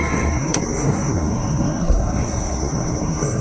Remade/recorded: remade